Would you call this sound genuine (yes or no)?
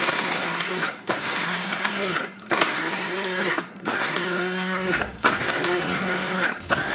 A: no